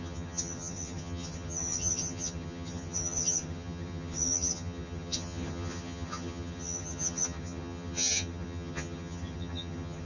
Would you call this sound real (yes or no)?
no